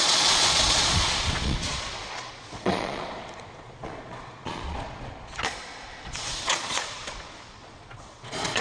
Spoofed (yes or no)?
yes